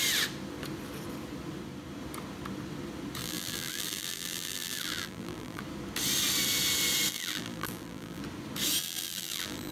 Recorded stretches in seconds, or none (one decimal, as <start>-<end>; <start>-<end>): 0.0-3.2; 5.6-7.1; 8.2-8.8